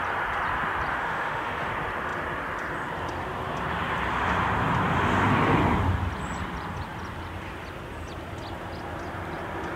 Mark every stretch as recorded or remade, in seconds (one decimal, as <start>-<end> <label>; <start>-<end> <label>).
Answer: 0.0-0.9 recorded; 0.9-1.7 remade; 1.7-9.8 recorded